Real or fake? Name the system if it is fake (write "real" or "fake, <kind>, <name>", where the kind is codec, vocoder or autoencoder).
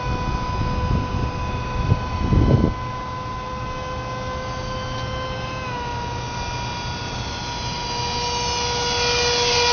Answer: real